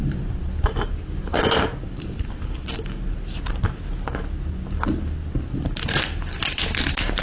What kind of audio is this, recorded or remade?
recorded